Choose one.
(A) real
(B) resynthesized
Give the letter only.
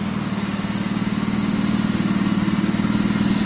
A